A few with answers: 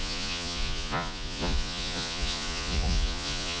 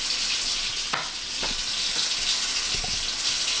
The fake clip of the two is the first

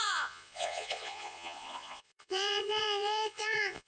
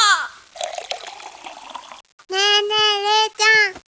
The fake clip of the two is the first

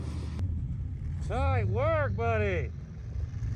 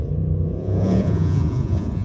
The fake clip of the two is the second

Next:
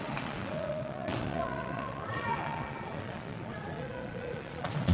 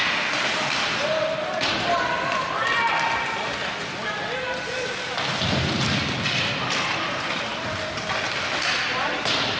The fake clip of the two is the first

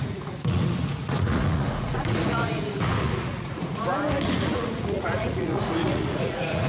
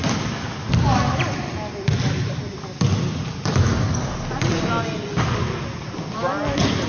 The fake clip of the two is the first